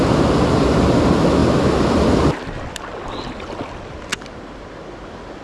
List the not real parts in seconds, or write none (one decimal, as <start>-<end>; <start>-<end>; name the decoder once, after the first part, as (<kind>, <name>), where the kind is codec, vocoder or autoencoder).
none